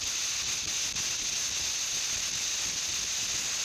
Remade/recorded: recorded